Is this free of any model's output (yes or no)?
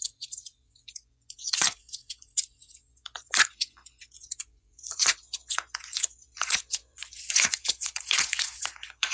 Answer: no